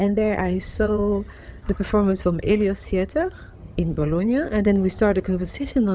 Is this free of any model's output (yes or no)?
no